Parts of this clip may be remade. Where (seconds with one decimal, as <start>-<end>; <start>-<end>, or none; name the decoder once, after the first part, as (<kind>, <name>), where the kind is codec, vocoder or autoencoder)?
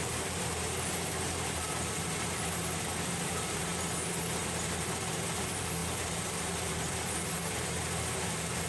0.0-3.7 (vocoder, BigVGAN v2); 4.4-8.7